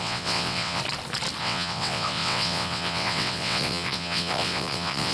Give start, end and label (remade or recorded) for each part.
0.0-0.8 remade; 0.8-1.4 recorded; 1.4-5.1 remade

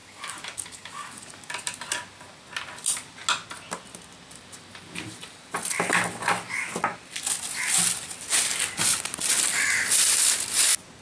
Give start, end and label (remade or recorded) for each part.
0.0-1.5 remade; 1.5-11.0 recorded

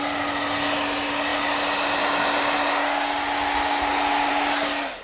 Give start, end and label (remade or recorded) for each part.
0.0-5.0 recorded

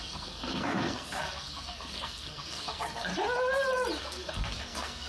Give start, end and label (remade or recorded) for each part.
0.0-3.1 remade; 3.1-4.0 recorded; 4.0-5.1 remade

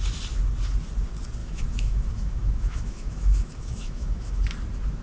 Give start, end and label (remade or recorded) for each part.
0.0-1.4 recorded; 1.4-4.4 remade; 4.4-5.0 recorded

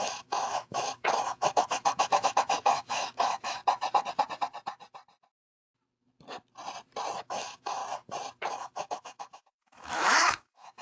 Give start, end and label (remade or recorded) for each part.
0.0-3.6 remade; 3.6-7.2 recorded; 7.2-7.8 remade; 7.8-8.5 recorded; 8.5-10.8 remade

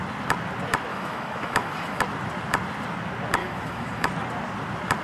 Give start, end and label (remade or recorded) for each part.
0.0-0.9 recorded; 0.9-2.0 remade; 2.0-3.4 recorded; 3.4-4.1 remade; 4.1-5.0 recorded

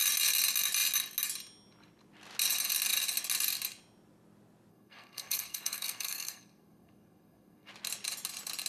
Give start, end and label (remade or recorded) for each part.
0.0-4.7 recorded; 4.7-7.7 remade; 7.7-8.7 recorded